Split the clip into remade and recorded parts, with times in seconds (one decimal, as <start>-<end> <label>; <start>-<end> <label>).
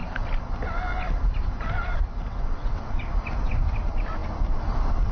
0.0-2.3 recorded; 2.3-3.0 remade; 3.0-5.1 recorded